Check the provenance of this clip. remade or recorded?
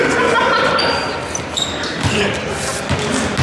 recorded